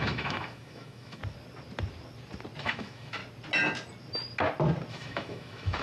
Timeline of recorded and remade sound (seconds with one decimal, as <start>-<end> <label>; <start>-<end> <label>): 0.0-1.2 remade; 1.2-2.6 recorded; 2.6-3.2 remade; 3.2-4.9 recorded; 4.9-5.8 remade